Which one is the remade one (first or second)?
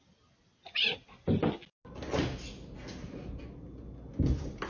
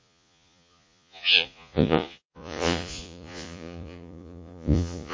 second